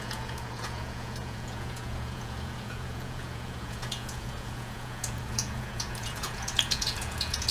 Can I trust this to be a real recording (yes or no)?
no